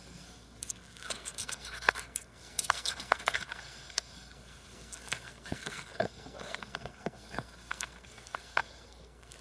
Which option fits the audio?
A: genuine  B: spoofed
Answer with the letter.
B